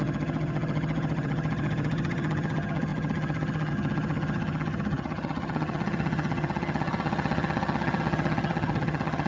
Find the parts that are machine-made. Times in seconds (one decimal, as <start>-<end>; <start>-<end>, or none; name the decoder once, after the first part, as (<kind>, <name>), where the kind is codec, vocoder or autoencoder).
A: 0.0-9.3 (vocoder, HiFi-GAN)